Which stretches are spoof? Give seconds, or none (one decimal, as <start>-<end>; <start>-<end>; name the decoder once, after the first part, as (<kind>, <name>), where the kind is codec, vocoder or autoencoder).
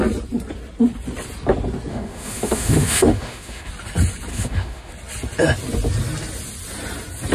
1.9-3.7 (autoencoder, DAC-VAE); 4.3-4.9